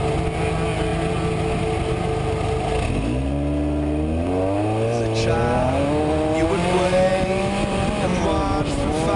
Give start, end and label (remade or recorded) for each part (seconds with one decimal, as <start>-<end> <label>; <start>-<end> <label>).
0.0-9.2 recorded